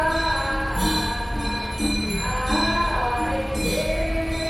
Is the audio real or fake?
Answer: real